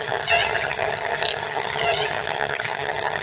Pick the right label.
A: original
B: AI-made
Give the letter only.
B